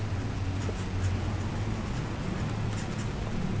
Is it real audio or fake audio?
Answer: real